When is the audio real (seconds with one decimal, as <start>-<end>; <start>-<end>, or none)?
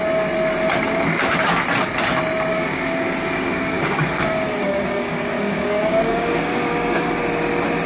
0.0-2.5; 7.2-7.9